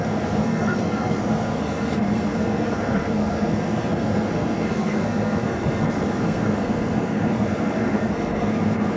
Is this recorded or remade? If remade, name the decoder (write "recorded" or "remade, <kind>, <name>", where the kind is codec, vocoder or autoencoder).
remade, codec, SNAC